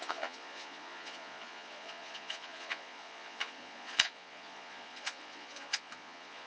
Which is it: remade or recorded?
remade